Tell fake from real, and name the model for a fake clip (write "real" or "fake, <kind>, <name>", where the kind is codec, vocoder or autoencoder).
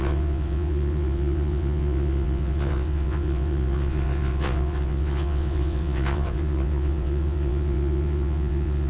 fake, vocoder, WaveNeXt